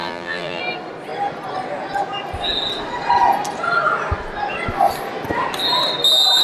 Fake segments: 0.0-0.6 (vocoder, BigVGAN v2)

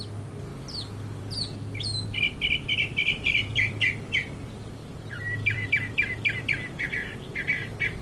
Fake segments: 2.8-3.7 (vocoder, BigVGAN v2); 4.8-6.4

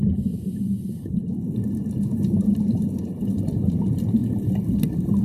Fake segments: 0.0-1.2 (vocoder, BigVGAN v2); 1.9-4.2

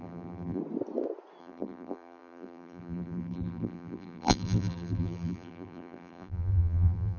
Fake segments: 0.0-0.6 (vocoder, BigVGAN v2); 1.4-7.2

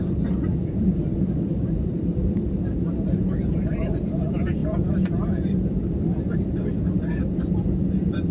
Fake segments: 1.1-3.0 (vocoder, BigVGAN v2)

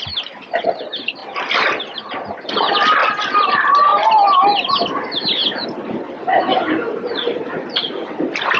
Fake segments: 0.0-3.0 (vocoder, BigVGAN v2); 3.5-3.9; 5.0-8.6

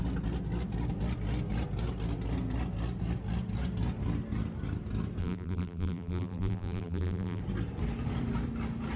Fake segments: 5.2-7.4 (vocoder, BigVGAN v2)

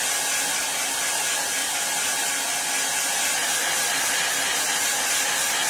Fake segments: none